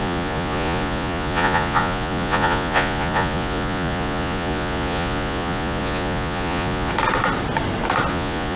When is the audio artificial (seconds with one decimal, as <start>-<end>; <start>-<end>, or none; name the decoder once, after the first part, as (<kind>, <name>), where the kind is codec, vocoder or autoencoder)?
0.0-6.9 (vocoder, Vocos); 8.1-8.6